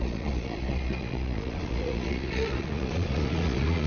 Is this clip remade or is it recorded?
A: remade